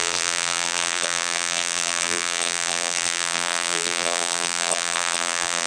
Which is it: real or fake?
fake